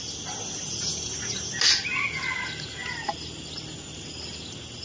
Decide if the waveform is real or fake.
real